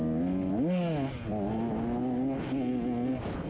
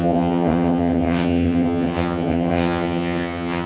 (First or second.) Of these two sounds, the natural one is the first